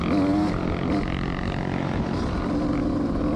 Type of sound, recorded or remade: recorded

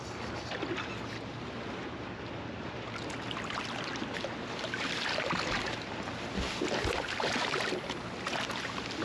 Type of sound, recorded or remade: recorded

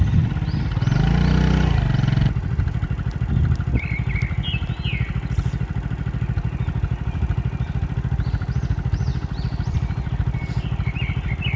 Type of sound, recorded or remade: recorded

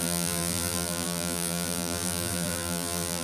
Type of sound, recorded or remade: remade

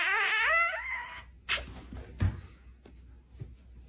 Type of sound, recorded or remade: recorded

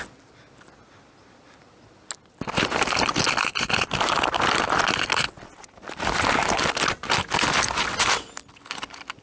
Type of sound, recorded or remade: recorded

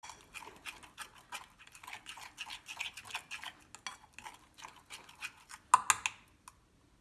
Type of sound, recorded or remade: recorded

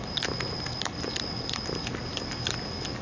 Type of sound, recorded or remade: recorded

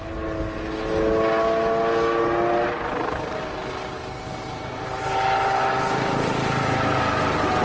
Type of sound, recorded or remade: recorded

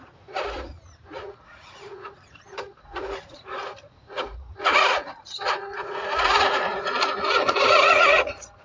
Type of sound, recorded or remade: remade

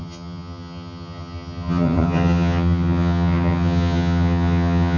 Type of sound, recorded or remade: remade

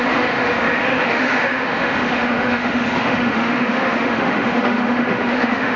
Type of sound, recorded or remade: remade